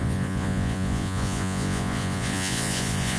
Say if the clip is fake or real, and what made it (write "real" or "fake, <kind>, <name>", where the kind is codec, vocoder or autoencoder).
fake, vocoder, Vocos